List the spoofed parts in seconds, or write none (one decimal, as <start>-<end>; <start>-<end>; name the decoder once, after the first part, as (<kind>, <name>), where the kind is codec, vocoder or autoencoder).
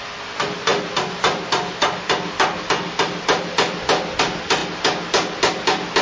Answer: none